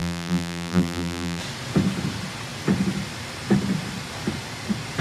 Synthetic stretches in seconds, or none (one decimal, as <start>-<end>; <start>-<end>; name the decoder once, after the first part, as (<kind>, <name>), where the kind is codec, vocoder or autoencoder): 0.0-1.4 (vocoder, BigVGAN v2)